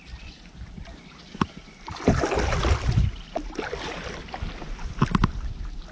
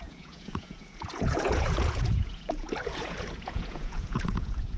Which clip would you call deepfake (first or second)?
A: second